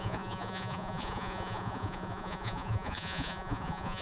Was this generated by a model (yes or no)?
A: yes